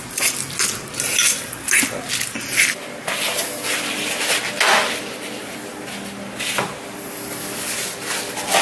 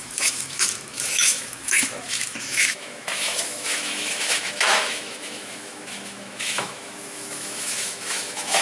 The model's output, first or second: second